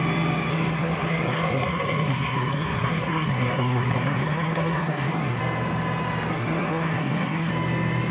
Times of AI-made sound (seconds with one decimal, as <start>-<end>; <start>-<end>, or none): 0.5-5.4; 6.3-7.5